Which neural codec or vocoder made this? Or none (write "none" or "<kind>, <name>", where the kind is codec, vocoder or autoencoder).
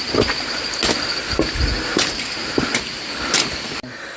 none